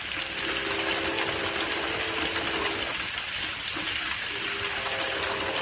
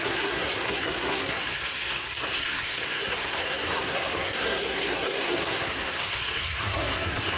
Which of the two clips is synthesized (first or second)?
second